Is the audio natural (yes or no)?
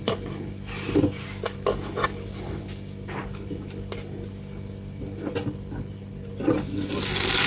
yes